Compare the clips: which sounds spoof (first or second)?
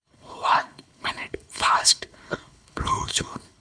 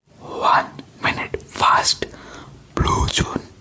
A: first